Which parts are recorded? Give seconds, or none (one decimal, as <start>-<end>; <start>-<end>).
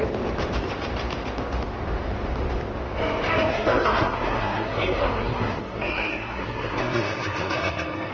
0.0-3.5